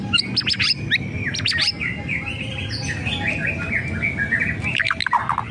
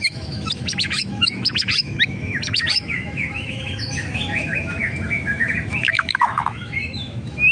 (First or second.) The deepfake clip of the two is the second